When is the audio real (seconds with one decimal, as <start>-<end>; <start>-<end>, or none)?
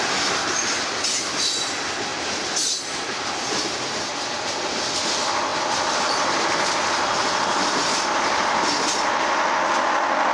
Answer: none